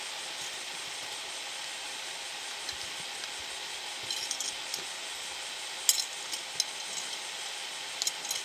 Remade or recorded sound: recorded